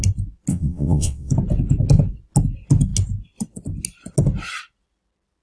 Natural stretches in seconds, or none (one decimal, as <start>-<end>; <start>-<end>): 0.0-0.5; 1.3-5.4